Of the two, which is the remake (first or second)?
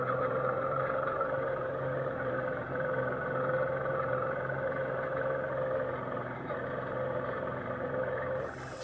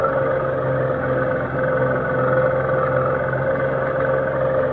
first